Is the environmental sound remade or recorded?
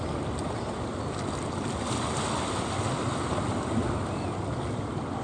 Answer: recorded